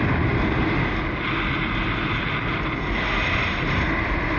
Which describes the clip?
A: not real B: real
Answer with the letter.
B